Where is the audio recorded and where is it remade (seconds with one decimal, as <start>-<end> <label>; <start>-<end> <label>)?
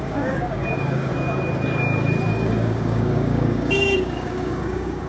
0.0-1.1 remade; 1.1-2.3 recorded; 2.3-5.1 remade